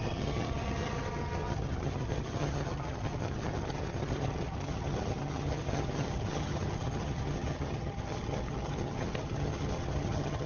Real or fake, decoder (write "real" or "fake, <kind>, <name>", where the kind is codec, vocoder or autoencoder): fake, vocoder, HiFi-GAN